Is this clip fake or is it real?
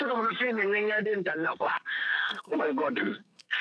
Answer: fake